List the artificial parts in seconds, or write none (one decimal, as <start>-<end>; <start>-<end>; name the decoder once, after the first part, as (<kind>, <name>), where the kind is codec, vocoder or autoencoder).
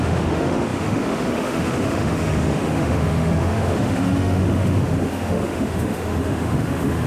0.0-7.1 (autoencoder, DAC-VAE)